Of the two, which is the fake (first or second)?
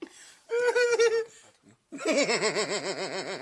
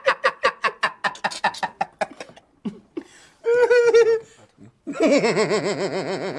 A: first